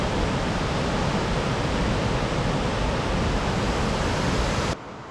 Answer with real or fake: real